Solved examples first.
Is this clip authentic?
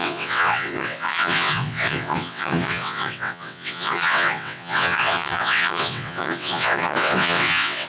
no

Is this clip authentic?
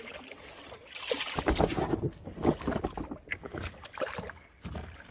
yes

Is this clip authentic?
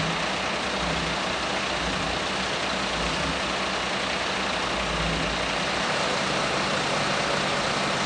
yes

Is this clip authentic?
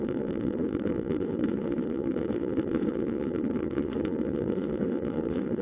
no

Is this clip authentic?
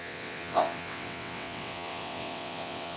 no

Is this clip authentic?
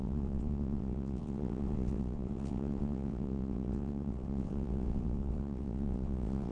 no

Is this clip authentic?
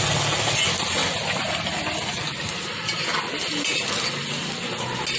yes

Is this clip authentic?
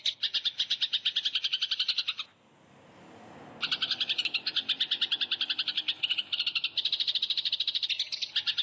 yes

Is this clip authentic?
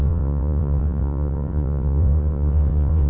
no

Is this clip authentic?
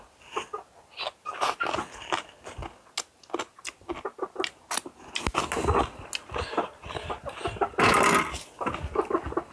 yes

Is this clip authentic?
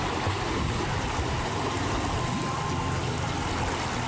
yes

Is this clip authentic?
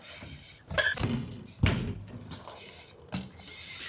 yes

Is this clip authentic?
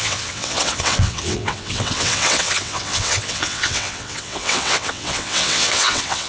no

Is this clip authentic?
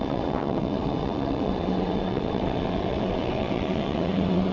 no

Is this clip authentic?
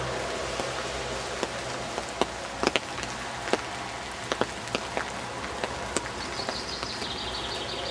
yes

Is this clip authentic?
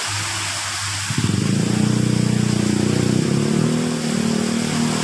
yes